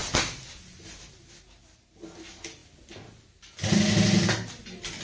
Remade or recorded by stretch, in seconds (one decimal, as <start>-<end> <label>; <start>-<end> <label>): 0.0-5.0 recorded

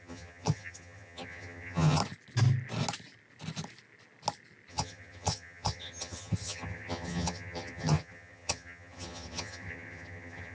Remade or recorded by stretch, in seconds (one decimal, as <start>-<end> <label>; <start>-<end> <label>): 0.0-2.0 remade; 2.0-4.7 recorded; 4.7-10.5 remade